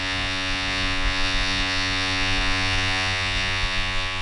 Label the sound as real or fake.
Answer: fake